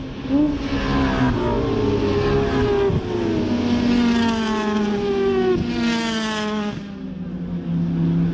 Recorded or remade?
recorded